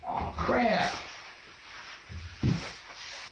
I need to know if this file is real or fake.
fake